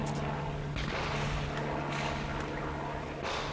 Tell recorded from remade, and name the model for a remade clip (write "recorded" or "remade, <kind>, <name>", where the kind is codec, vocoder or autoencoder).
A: recorded